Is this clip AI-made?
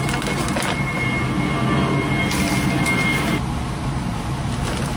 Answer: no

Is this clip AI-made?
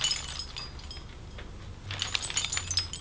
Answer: no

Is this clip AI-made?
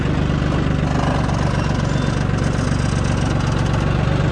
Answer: no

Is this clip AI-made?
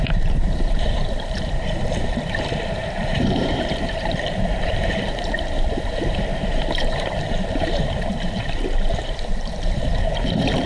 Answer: yes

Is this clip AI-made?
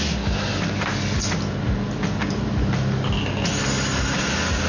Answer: no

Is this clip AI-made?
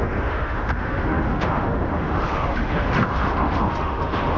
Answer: yes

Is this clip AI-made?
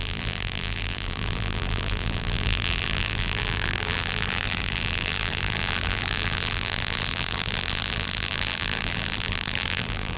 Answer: yes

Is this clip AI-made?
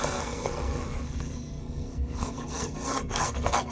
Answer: yes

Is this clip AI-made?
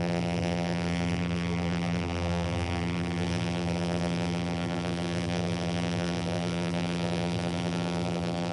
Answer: yes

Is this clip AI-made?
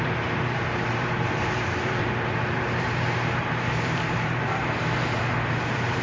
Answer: yes